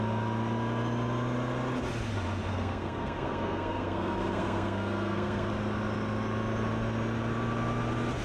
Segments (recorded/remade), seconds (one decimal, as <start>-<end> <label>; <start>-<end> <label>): 0.0-2.5 recorded; 2.5-5.5 remade; 5.5-8.2 recorded